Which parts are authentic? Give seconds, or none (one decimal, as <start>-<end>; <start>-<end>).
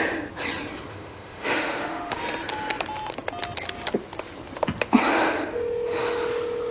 0.0-0.9; 2.2-6.7